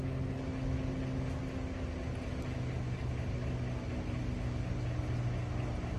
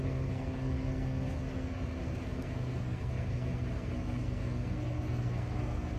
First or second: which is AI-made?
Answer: second